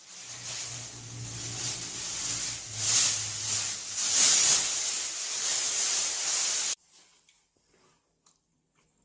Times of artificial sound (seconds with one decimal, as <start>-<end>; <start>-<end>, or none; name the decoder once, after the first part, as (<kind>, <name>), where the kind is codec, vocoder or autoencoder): none